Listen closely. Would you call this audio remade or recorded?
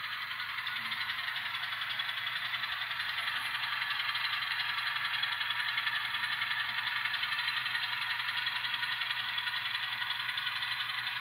remade